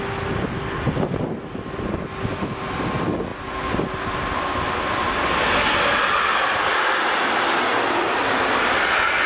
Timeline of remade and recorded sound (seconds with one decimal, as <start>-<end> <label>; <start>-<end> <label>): 0.0-9.3 recorded